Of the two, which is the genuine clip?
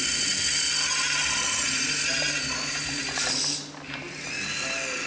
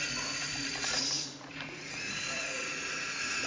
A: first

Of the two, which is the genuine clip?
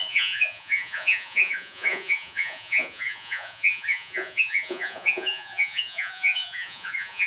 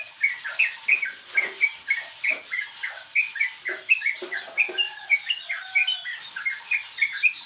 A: second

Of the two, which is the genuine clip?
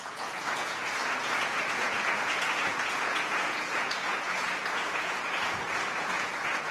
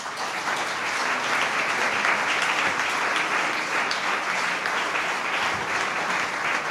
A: second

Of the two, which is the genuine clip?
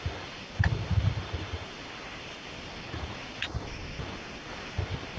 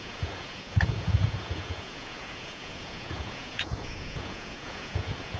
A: first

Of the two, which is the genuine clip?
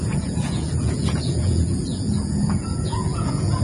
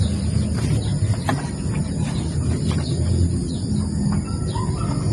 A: second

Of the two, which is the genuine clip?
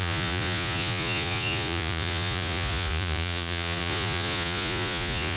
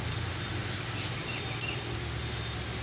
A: second